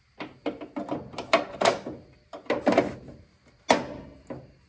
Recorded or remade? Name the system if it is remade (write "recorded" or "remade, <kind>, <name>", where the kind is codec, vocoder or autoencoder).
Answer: recorded